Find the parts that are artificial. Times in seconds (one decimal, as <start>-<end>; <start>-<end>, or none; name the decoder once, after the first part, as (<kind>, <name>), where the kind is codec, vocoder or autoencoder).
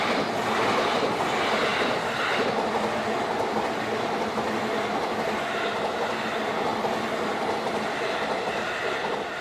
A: 1.7-2.3 (vocoder, BigVGAN v2); 6.7-7.9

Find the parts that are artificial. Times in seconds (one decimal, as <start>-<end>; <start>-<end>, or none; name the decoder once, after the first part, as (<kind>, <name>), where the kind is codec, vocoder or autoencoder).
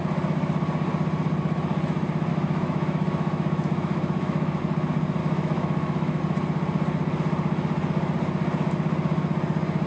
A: 2.3-4.6 (autoencoder, DAC-VAE); 5.2-6.2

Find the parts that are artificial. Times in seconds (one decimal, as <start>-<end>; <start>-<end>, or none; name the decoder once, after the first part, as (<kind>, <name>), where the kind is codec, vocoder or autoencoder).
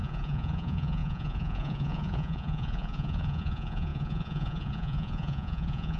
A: 0.0-6.0 (vocoder, Vocos)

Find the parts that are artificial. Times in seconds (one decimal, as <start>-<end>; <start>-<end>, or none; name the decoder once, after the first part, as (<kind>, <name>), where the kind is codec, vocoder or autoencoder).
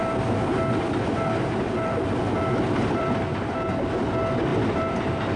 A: 0.5-3.7 (vocoder, BigVGAN v2); 4.5-5.4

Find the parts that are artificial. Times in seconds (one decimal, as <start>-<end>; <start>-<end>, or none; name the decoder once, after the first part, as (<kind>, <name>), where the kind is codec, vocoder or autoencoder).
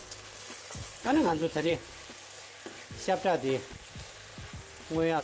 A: 0.0-1.7 (codec, HILCodec)